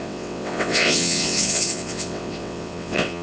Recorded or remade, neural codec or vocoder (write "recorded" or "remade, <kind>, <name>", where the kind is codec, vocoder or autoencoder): remade, vocoder, WaveNeXt